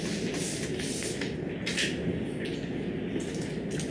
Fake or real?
real